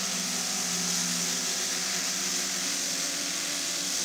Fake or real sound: real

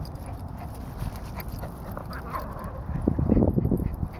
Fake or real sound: real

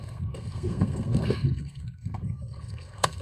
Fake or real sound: fake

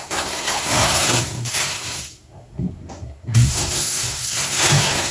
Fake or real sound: fake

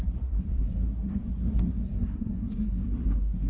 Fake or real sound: fake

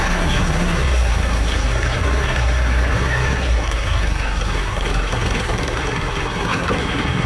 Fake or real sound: fake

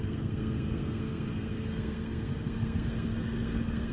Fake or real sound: fake